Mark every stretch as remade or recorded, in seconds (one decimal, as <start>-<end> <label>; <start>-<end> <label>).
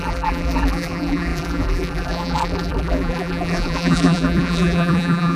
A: 0.0-5.4 remade